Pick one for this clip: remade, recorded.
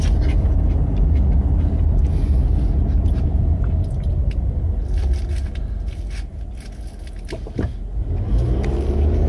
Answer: recorded